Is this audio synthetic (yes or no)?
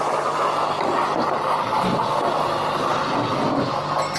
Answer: no